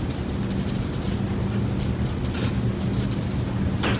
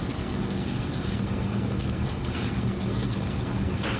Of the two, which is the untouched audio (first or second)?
first